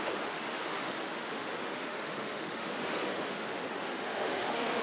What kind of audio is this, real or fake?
fake